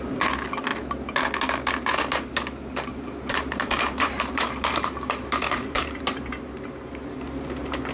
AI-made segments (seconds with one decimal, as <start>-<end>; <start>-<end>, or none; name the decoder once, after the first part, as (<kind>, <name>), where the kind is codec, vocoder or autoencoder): 2.9-6.4 (vocoder, BigVGAN v2)